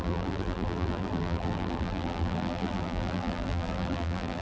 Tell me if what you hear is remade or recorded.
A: remade